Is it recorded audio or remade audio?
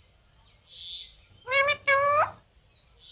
recorded